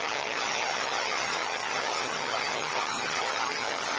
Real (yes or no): no